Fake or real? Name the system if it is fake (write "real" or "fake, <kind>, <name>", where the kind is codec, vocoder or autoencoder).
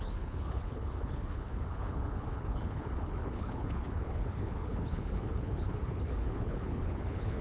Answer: fake, codec, HILCodec